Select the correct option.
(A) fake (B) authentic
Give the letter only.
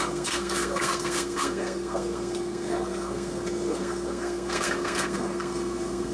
A